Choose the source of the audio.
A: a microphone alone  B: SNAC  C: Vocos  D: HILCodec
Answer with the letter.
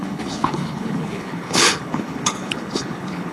D